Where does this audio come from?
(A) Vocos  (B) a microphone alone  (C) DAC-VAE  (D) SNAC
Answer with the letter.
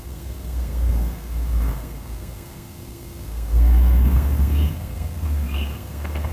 D